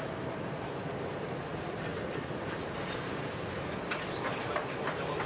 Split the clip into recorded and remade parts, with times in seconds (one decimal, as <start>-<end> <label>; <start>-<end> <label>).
0.0-1.9 remade; 1.9-5.3 recorded